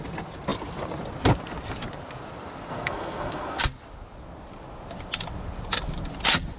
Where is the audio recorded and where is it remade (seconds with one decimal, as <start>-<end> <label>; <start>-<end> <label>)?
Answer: 0.0-2.7 recorded; 2.7-3.6 remade; 3.6-6.6 recorded